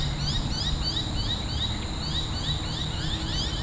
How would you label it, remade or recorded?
recorded